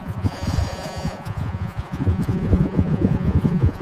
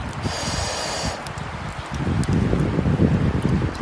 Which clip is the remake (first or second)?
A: first